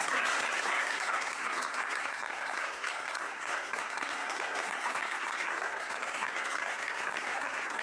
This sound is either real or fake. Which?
fake